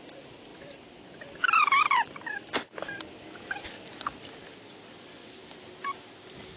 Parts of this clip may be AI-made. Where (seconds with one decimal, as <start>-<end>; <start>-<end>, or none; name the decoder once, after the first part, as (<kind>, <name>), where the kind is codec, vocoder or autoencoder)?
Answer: none